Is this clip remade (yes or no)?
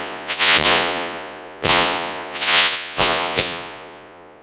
yes